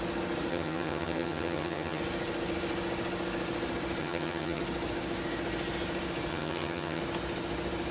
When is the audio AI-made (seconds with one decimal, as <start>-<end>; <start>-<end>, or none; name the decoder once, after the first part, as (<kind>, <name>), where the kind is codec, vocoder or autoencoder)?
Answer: 0.5-2.0 (vocoder, HiFi-GAN); 4.0-4.6; 6.3-7.0

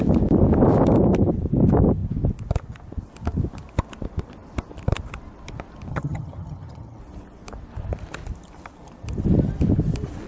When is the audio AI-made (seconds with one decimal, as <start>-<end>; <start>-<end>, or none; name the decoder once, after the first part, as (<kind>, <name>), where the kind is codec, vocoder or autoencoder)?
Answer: 5.9-7.0 (vocoder, HiFi-GAN)

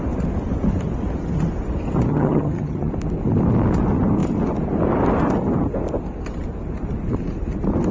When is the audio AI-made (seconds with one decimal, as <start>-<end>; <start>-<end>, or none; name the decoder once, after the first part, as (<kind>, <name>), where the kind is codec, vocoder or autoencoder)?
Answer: 2.1-2.9 (vocoder, HiFi-GAN)